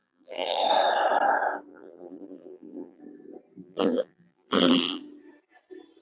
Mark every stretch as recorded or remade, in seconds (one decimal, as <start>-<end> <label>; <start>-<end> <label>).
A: 0.0-0.6 remade; 0.6-1.7 recorded; 1.7-3.0 remade; 3.0-3.6 recorded; 3.6-5.0 remade; 5.0-6.0 recorded